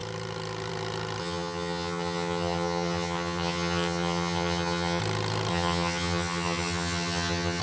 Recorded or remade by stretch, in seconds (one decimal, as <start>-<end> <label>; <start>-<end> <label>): 0.0-1.2 recorded; 1.2-5.0 remade; 5.0-5.5 recorded; 5.5-7.6 remade